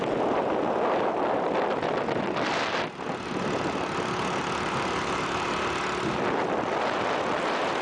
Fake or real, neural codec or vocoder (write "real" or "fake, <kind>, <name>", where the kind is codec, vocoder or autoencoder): real